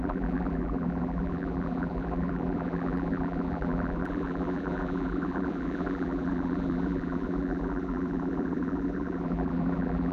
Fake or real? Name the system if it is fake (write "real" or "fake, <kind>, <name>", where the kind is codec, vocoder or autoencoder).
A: fake, vocoder, BigVGAN v2